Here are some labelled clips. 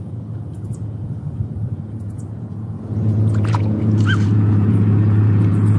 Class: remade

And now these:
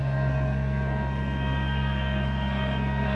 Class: remade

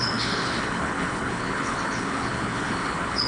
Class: remade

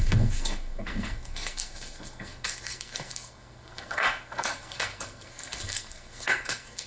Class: remade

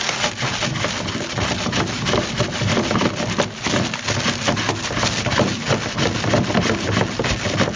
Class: recorded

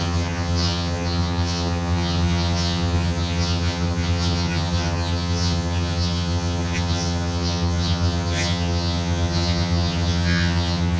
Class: remade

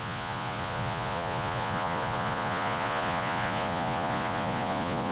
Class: remade